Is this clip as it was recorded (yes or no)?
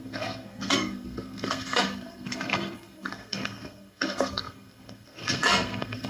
no